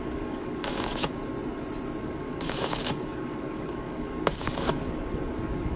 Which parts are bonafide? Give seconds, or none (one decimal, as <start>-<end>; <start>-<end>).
1.2-2.0

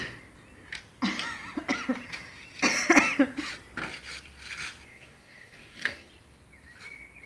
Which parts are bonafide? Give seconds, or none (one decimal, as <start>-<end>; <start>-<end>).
0.0-4.9; 6.1-7.3

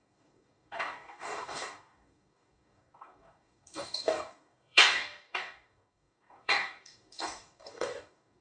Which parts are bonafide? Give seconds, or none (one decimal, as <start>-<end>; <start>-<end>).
none

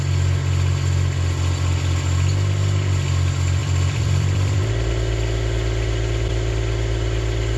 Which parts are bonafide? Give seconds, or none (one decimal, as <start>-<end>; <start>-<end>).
0.0-3.6; 4.6-7.6